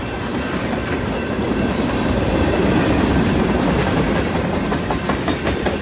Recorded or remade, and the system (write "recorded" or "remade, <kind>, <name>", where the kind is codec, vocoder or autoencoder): remade, vocoder, BigVGAN v2